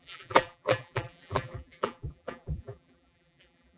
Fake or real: fake